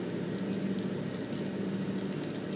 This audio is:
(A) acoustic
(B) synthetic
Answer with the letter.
A